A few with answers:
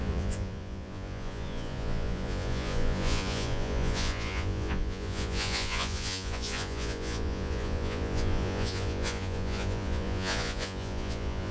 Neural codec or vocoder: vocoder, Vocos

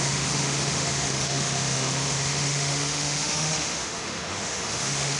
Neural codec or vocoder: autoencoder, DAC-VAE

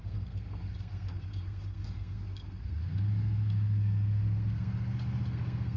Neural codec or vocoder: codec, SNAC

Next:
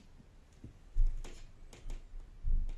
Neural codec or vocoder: none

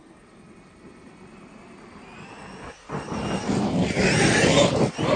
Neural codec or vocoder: none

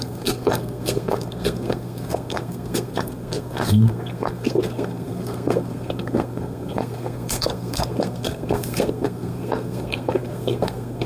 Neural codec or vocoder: codec, SNAC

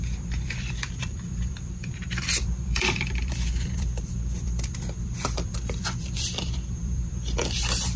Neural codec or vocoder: vocoder, BigVGAN v2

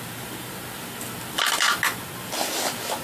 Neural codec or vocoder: none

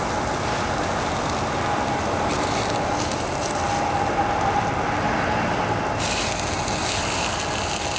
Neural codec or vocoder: none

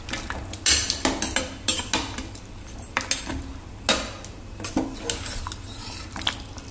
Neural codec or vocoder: none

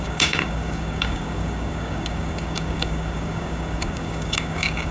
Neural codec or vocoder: codec, DAC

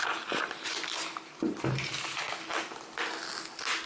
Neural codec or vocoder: none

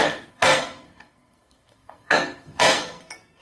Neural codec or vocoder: codec, SNAC